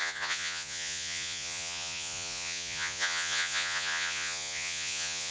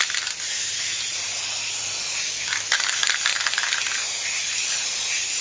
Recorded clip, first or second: second